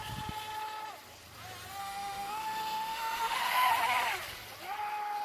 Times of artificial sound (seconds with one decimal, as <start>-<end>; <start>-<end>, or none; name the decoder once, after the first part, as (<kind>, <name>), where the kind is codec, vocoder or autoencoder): 1.8-3.7 (autoencoder, DAC-VAE)